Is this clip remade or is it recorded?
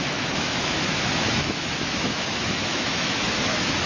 remade